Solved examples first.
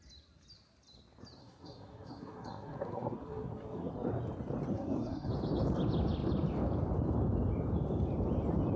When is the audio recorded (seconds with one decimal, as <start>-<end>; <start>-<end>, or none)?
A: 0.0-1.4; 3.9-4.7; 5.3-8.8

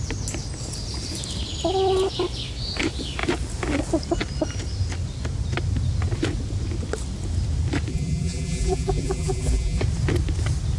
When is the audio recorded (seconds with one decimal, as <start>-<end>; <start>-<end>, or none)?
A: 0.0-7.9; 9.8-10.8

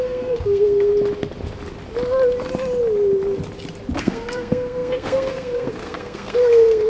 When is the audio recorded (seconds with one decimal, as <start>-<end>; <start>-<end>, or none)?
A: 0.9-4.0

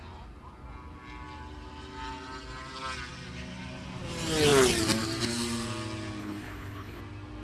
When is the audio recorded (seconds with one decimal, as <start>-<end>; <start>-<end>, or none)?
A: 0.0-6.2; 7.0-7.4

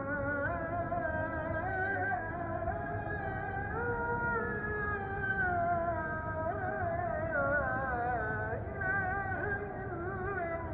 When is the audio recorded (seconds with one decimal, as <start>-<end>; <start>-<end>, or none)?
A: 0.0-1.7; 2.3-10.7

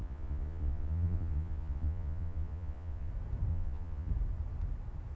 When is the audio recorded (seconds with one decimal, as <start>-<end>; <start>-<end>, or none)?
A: 3.1-3.5; 4.1-5.2